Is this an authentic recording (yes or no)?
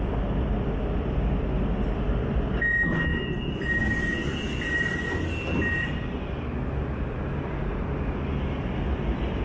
yes